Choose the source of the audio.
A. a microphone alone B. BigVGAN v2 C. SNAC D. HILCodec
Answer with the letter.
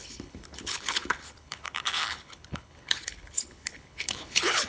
D